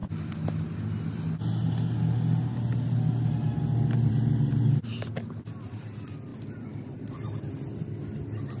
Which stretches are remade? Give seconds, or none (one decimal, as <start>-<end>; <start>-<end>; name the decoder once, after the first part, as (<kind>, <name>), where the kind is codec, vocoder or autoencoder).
none